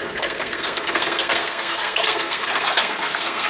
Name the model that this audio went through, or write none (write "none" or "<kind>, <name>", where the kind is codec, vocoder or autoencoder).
codec, SNAC